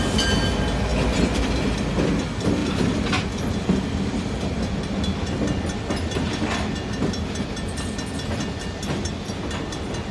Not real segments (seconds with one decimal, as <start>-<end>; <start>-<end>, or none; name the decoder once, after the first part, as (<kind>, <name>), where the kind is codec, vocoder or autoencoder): none